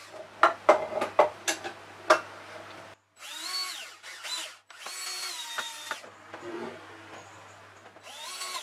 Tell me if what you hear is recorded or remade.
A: recorded